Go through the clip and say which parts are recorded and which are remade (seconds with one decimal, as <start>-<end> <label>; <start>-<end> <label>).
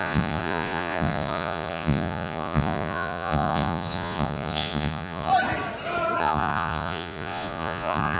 0.0-5.3 remade; 5.3-6.2 recorded; 6.2-8.2 remade